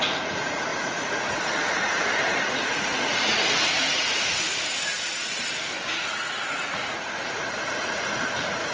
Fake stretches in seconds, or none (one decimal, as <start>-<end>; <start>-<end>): 0.0-5.2; 6.0-8.7